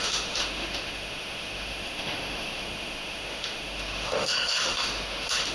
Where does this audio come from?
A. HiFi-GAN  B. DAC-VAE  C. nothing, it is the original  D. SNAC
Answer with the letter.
B